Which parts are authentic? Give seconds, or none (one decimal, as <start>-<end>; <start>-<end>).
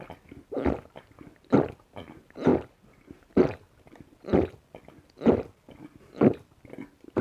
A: 0.0-2.5; 3.1-7.2